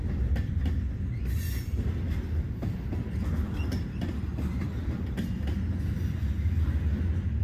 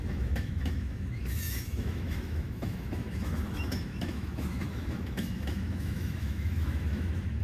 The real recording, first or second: first